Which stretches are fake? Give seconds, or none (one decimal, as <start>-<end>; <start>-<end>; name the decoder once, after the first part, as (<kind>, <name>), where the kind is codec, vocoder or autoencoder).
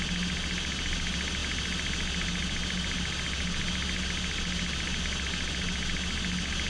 none